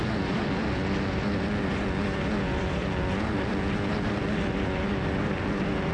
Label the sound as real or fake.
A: fake